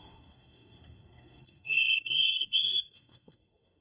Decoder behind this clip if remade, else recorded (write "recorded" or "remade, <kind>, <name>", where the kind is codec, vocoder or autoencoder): remade, codec, SNAC